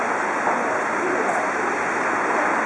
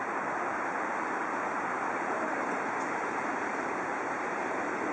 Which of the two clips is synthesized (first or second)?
second